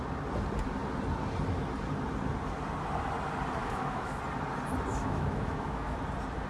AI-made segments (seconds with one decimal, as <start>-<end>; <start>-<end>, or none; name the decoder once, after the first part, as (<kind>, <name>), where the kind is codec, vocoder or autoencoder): 3.6-4.2 (autoencoder, DAC-VAE); 4.9-6.0